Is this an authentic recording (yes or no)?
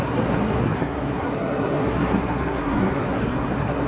no